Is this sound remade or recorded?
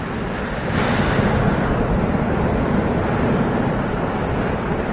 recorded